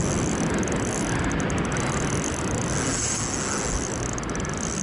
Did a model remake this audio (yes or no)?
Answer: no